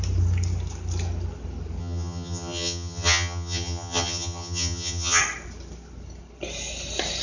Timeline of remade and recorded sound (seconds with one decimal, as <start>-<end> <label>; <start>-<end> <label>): 0.0-1.8 recorded; 1.8-5.2 remade; 5.2-7.2 recorded

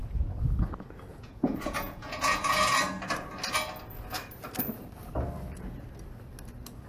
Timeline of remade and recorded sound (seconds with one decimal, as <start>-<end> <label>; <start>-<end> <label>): 0.0-0.7 remade; 0.7-1.1 recorded; 1.1-2.8 remade; 2.8-6.9 recorded

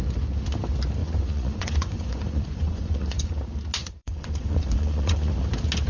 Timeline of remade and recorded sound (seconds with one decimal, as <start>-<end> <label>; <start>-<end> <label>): 0.0-1.0 recorded; 1.0-3.3 remade; 3.3-3.8 recorded; 3.8-5.3 remade; 5.3-5.9 recorded